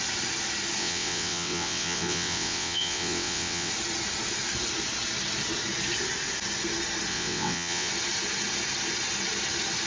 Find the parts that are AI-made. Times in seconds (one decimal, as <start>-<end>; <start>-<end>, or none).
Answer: 0.8-3.7; 7.1-7.9